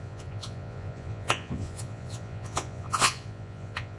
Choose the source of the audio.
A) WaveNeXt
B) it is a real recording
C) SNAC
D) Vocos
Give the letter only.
D